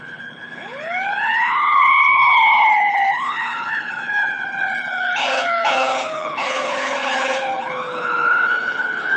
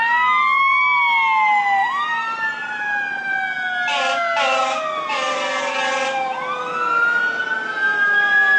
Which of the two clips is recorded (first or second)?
second